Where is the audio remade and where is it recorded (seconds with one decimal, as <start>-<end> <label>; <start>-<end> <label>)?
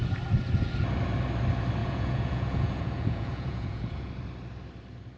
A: 0.0-1.8 recorded; 1.8-4.1 remade; 4.1-5.2 recorded